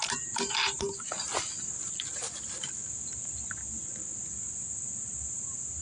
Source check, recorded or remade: remade